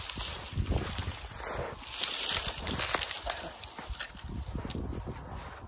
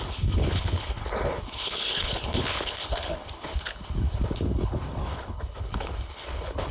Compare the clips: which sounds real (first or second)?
first